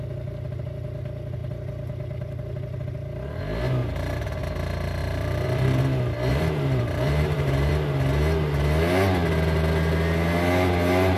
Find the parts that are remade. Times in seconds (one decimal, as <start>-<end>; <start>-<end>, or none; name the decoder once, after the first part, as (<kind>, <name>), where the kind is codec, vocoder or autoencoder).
3.8-4.4 (vocoder, BigVGAN v2); 5.0-5.8; 6.3-7.7